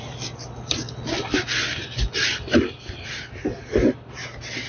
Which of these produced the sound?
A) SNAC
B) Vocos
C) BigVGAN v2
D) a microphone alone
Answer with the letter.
D